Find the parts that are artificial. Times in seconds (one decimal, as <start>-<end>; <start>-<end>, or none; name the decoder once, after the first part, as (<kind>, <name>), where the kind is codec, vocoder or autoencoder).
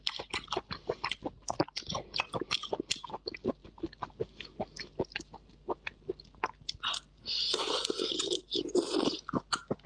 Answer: none